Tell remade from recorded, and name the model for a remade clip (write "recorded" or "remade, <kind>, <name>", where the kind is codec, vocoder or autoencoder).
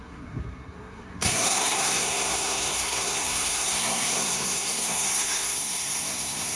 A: remade, codec, SNAC